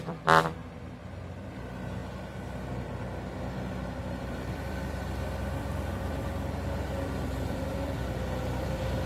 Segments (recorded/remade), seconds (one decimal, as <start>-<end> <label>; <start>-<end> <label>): 0.0-2.0 remade; 2.0-4.0 recorded; 4.0-9.1 remade